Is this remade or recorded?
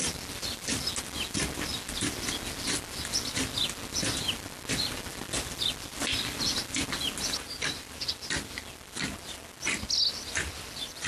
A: recorded